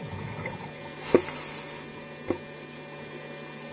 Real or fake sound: real